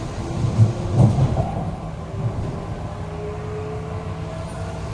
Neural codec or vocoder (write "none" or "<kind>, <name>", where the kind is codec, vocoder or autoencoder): none